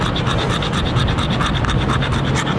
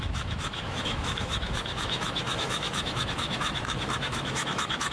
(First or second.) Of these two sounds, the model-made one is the second